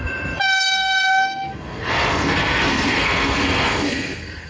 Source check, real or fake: fake